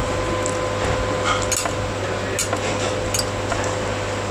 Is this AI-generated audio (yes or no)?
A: no